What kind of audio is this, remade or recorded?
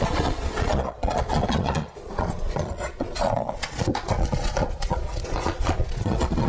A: remade